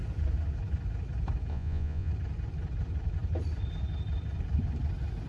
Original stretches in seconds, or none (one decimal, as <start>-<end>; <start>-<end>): 0.0-1.5; 2.1-5.3